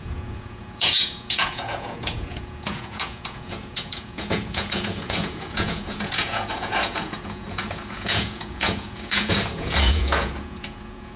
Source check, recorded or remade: remade